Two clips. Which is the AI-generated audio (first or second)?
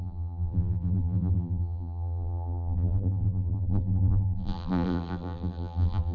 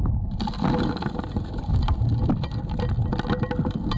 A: first